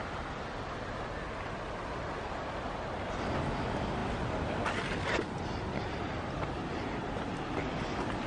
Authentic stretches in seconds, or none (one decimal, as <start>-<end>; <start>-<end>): 0.0-8.3